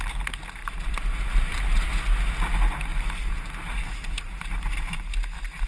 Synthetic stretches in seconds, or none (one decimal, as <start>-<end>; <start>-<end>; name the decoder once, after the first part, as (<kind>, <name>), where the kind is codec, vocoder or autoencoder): 0.6-1.9 (vocoder, BigVGAN v2); 2.9-5.1